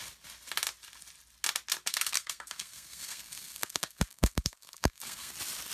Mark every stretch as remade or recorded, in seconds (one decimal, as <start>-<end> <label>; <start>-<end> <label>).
0.0-1.9 recorded; 1.9-5.3 remade; 5.3-5.7 recorded